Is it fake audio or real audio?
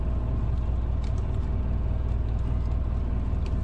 real